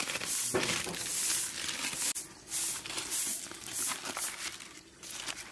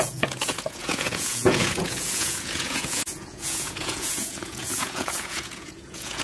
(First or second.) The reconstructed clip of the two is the second